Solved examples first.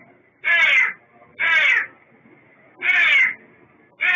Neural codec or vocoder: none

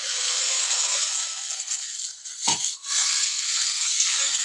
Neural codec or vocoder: codec, SNAC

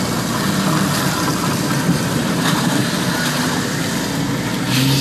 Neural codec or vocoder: none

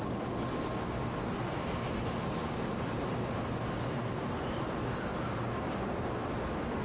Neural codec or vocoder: none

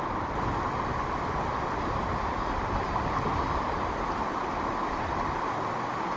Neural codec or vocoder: none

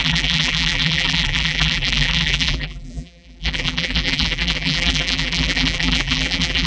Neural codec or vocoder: vocoder, BigVGAN v2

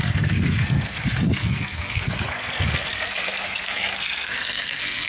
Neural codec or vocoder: codec, SNAC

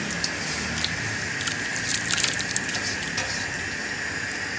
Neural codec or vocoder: vocoder, BigVGAN v2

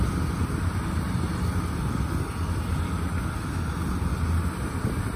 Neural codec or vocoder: none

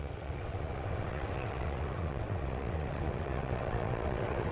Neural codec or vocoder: vocoder, WaveNeXt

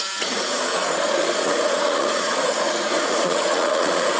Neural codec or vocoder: vocoder, Vocos